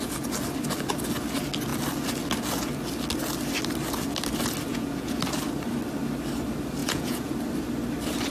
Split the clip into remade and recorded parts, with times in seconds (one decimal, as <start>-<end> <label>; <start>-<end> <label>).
0.0-4.7 recorded; 4.7-5.2 remade; 5.2-6.8 recorded; 6.8-7.3 remade; 7.3-8.3 recorded